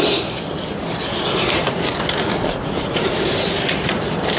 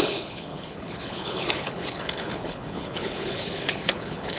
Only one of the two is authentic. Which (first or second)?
first